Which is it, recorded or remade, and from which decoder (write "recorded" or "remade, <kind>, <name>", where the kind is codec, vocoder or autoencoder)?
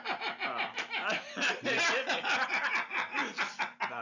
recorded